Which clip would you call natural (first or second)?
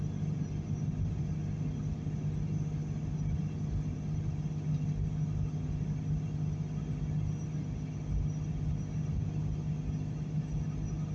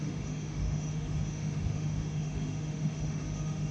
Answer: first